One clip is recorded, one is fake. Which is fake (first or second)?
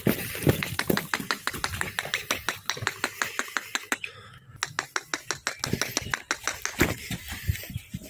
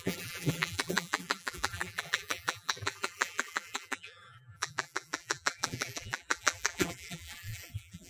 second